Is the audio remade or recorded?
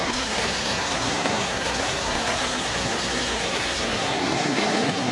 remade